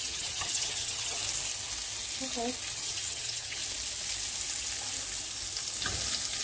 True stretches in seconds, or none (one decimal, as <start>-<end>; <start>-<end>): 1.2-2.7; 3.6-6.4